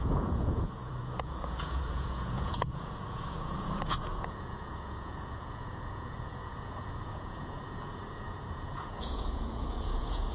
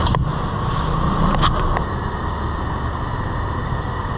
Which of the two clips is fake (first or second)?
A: first